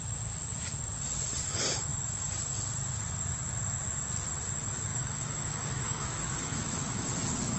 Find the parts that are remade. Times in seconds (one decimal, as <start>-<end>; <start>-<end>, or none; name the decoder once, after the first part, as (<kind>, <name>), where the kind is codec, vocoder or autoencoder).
4.9-7.1 (autoencoder, DAC-VAE)